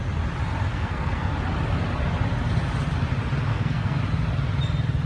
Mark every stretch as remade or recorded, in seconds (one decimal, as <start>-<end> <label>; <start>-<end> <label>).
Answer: 0.0-0.7 recorded; 0.7-1.3 remade; 1.3-3.5 recorded; 3.5-4.0 remade; 4.0-5.1 recorded